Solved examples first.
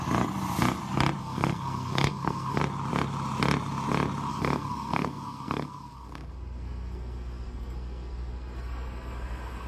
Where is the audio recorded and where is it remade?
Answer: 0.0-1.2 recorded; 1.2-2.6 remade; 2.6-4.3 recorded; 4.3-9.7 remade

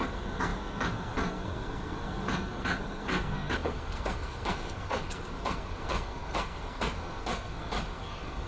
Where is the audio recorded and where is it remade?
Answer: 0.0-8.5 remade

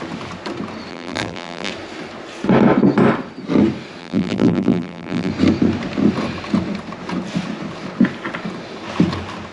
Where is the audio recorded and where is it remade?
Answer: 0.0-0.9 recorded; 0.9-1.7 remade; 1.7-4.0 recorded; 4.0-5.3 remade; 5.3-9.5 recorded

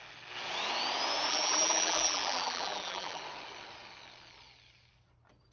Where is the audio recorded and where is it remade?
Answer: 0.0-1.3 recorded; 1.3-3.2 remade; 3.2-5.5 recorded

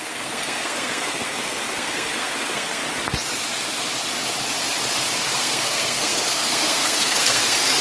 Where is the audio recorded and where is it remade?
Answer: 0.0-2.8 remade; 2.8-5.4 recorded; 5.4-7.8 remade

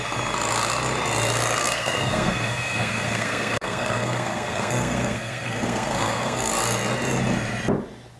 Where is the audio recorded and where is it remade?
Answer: 0.0-1.6 recorded; 1.6-6.5 remade; 6.5-8.2 recorded

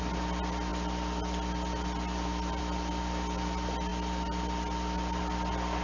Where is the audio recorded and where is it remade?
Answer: 0.0-5.8 recorded